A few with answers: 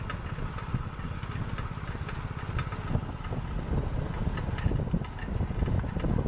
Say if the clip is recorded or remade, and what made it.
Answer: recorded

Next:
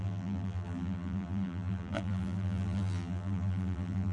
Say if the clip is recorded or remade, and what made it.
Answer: remade, vocoder, BigVGAN v2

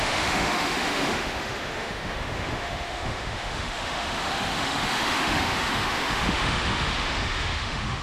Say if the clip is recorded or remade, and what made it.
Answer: remade, autoencoder, DAC-VAE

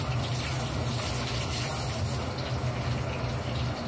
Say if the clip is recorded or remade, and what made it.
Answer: recorded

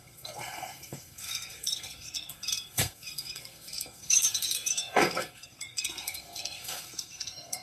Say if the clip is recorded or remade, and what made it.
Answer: remade, codec, SNAC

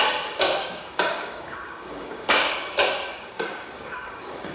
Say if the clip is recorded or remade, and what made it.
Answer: remade, codec, DAC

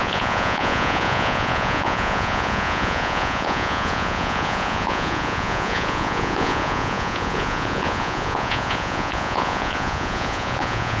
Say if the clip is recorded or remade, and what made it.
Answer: remade, vocoder, Vocos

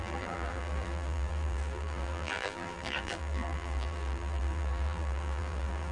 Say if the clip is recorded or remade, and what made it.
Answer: remade, vocoder, BigVGAN v2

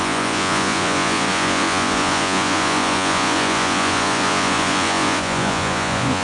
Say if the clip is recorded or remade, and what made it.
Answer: remade, vocoder, Vocos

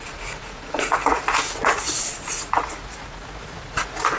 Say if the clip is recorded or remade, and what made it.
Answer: remade, vocoder, Vocos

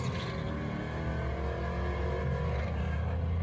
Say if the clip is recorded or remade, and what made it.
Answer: recorded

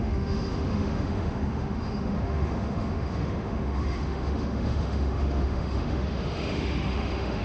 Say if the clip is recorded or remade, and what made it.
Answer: remade, autoencoder, DAC-VAE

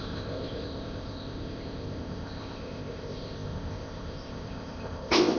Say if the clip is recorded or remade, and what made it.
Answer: remade, codec, ZipCodec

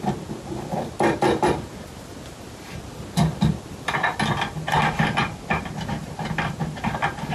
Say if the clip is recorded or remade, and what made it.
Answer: recorded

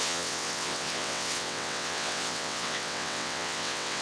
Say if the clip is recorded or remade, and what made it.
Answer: remade, vocoder, WaveNeXt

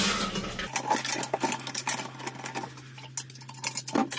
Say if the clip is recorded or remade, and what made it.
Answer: recorded